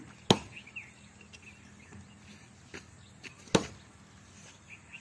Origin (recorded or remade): recorded